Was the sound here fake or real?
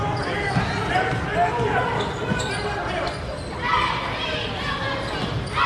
real